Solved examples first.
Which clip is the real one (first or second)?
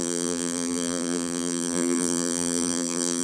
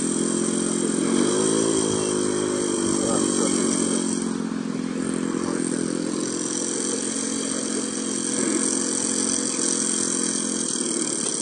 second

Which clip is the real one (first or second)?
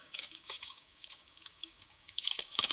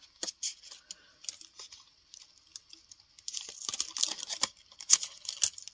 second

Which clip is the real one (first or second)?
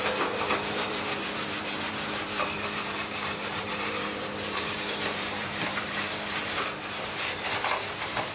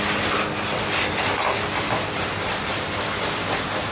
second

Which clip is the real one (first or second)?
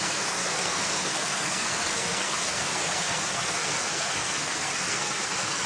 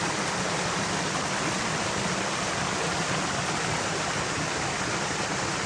second